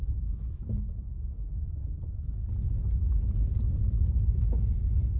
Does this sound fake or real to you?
real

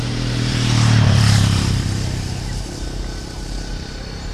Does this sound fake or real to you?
fake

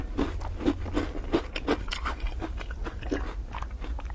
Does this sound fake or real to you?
real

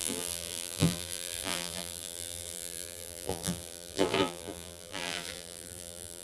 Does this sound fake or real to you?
fake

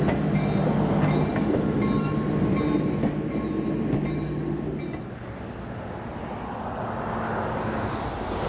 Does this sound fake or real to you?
real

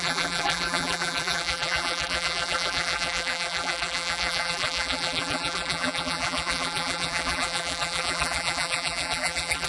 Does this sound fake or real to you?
fake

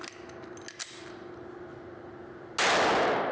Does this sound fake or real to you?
real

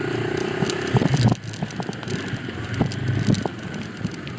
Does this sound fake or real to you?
real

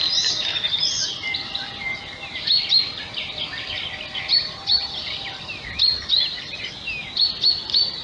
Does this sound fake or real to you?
real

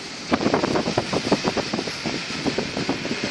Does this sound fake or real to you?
fake